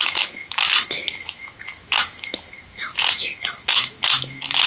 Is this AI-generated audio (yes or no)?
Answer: yes